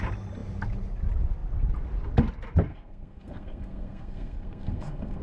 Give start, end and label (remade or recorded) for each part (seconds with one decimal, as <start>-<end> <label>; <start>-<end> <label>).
0.0-2.7 recorded; 2.7-5.2 remade